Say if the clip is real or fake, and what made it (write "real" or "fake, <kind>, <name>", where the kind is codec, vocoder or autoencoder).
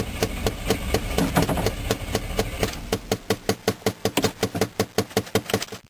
real